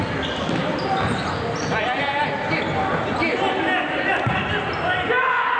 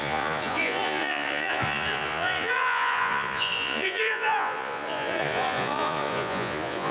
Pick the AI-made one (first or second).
second